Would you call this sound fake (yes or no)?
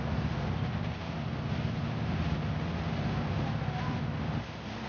no